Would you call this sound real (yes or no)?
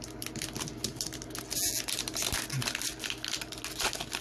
yes